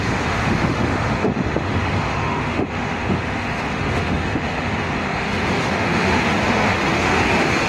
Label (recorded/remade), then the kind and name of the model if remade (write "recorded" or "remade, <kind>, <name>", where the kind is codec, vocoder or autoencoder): remade, autoencoder, DAC-VAE